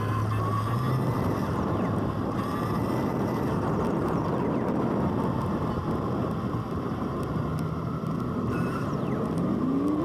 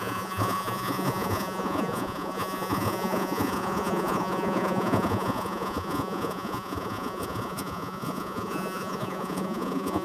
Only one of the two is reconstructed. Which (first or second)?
second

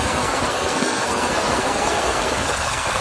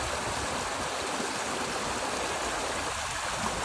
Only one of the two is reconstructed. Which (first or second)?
first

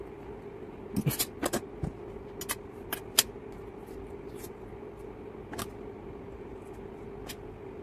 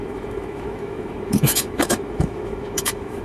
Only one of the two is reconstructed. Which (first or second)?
second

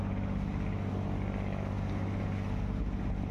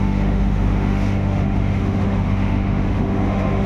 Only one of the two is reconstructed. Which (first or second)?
second